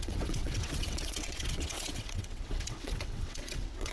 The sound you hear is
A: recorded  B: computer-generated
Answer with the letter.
B